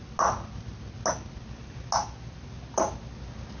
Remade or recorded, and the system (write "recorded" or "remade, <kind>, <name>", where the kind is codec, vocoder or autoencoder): recorded